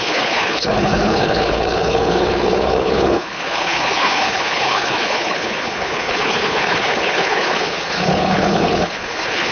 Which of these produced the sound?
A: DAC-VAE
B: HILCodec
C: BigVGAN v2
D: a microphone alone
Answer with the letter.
B